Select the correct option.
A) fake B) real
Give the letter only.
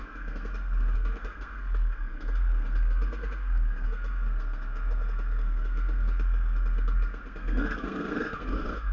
A